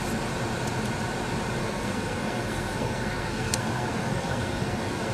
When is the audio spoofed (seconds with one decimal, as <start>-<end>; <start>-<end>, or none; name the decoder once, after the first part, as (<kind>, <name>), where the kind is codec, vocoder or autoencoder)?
1.6-5.1 (codec, SNAC)